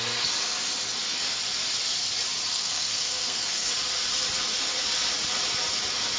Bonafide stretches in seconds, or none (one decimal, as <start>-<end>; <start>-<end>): 0.0-2.5; 3.7-6.2